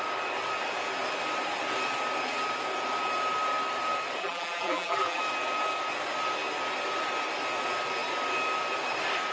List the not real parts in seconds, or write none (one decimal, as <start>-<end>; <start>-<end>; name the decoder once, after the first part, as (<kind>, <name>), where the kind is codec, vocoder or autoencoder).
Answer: 4.2-5.2 (vocoder, BigVGAN v2)